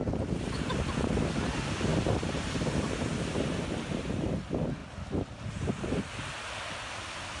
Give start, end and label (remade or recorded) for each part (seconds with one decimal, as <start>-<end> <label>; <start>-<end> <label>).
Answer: 0.0-7.4 recorded